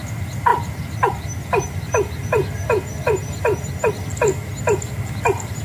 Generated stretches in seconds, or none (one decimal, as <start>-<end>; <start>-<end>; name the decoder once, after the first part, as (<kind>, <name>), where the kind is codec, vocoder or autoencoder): none